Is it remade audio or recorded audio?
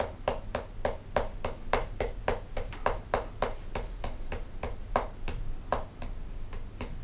recorded